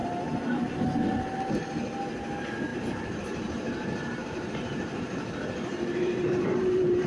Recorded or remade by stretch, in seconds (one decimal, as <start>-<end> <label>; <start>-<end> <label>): 0.0-2.7 recorded; 2.7-7.1 remade